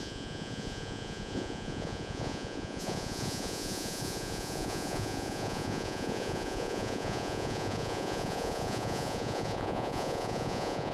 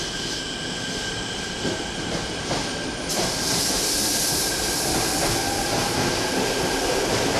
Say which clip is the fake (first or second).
first